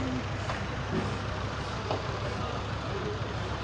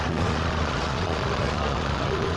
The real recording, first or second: first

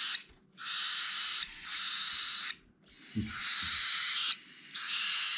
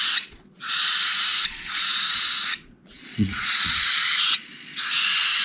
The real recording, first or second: first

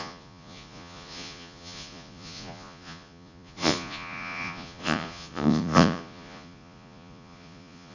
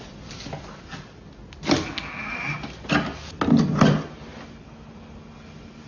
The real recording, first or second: second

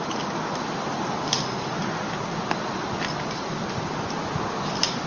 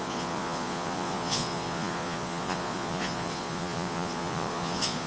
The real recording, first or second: first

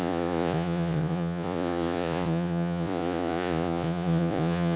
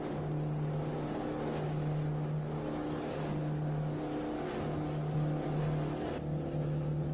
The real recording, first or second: second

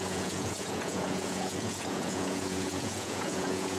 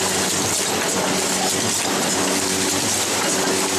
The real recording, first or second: second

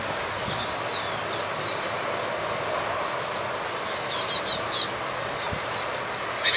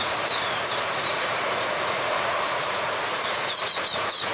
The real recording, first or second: first